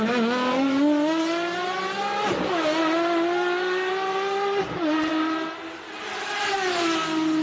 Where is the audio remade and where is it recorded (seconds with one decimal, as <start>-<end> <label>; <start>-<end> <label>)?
0.0-7.4 recorded